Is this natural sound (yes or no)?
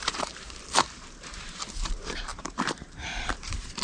no